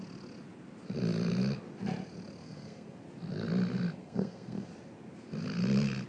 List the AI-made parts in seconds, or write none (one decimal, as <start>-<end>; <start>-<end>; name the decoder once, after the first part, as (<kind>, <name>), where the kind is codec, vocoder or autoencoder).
2.4-3.0 (codec, SNAC); 4.0-4.7